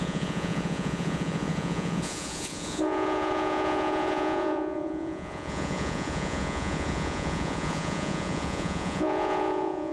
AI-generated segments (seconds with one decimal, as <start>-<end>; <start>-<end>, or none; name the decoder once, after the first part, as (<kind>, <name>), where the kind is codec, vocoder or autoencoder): 0.0-9.9 (vocoder, Vocos)